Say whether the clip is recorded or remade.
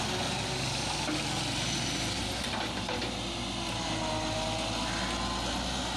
recorded